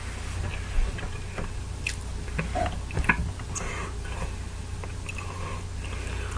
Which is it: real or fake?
real